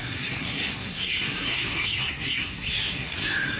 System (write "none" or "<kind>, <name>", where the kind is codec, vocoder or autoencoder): codec, SNAC